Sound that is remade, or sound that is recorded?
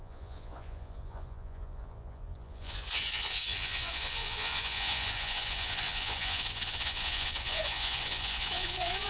remade